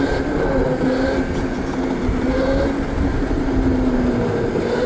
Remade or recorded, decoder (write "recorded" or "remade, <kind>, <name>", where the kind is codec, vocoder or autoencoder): recorded